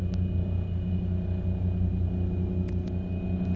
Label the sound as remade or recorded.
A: recorded